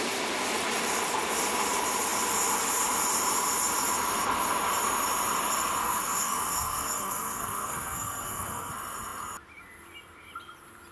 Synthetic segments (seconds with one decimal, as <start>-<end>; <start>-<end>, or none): 5.8-8.7